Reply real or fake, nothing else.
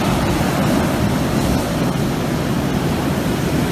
real